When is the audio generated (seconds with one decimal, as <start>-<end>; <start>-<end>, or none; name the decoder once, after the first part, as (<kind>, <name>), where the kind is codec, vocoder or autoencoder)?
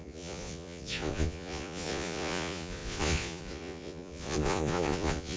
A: 0.0-5.4 (vocoder, Vocos)